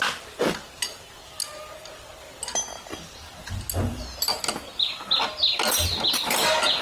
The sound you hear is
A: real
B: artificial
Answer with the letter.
A